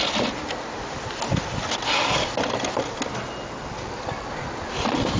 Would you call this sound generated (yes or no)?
no